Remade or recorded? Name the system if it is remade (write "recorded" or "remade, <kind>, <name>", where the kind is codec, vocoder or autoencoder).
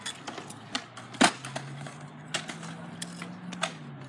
recorded